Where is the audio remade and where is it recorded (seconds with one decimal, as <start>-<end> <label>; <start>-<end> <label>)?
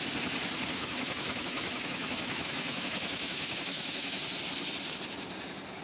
0.0-0.7 recorded; 0.7-4.2 remade; 4.2-5.8 recorded